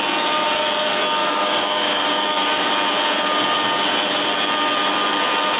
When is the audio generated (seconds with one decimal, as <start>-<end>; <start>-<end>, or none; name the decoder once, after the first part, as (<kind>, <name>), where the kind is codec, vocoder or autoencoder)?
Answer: 1.2-2.7 (codec, DAC)